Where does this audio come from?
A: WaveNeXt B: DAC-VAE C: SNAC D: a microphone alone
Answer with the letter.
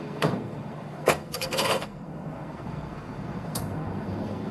C